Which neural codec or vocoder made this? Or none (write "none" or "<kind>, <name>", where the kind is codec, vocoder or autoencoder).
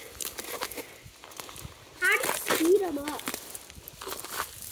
none